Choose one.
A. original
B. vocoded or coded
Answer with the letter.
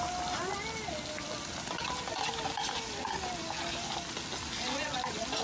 A